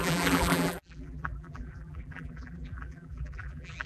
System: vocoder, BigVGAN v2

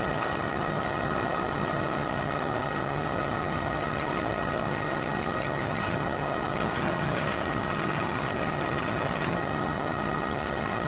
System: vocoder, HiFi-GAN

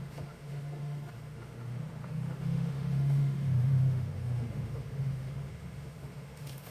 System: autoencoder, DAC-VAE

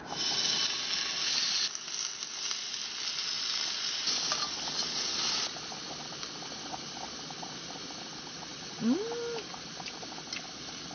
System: none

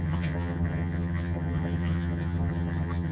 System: vocoder, HiFi-GAN